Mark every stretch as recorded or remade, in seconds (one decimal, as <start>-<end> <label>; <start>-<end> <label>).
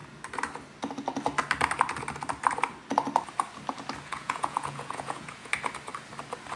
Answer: 0.0-4.1 recorded; 4.1-5.5 remade; 5.5-6.6 recorded